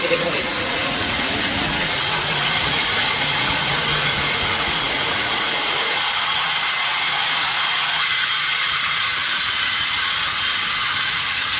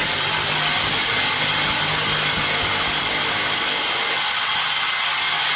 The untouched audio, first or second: second